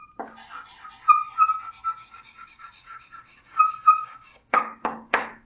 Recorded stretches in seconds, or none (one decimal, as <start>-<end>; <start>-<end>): 0.0-2.0